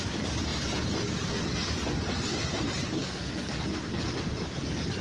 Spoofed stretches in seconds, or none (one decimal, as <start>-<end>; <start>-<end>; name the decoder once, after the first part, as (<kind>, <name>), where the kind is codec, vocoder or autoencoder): 3.0-3.5 (codec, SNAC)